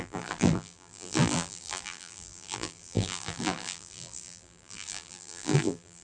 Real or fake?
fake